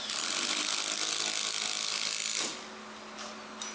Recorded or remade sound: recorded